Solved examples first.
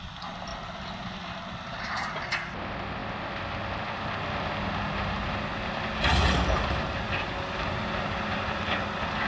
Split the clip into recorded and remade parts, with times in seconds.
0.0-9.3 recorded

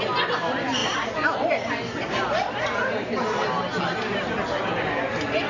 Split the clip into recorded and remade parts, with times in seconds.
0.0-5.5 recorded

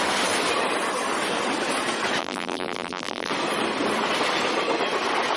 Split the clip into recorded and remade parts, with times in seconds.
0.0-2.2 recorded; 2.2-3.3 remade; 3.3-5.4 recorded